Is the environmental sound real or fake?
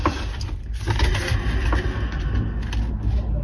real